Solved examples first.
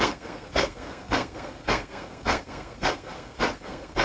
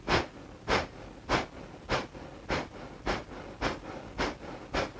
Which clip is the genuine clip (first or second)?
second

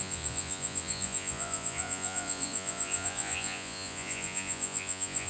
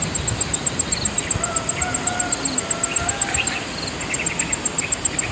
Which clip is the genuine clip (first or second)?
second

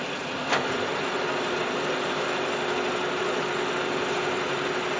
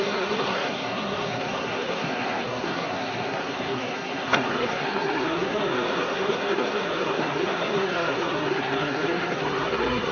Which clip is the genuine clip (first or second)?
first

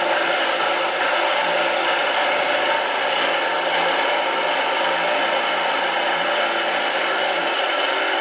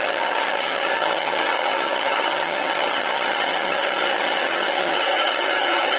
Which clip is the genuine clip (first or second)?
first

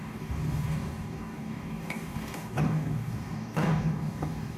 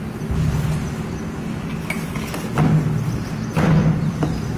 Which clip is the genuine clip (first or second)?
second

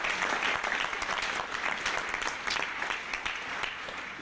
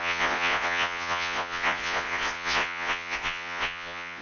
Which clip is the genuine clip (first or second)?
first